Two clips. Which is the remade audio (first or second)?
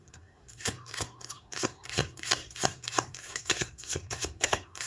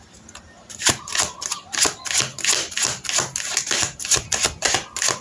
first